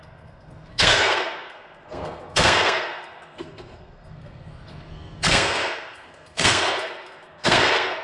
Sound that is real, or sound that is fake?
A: fake